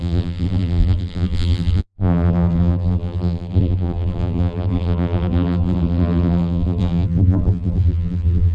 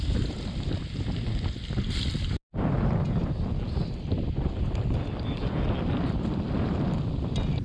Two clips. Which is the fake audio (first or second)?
first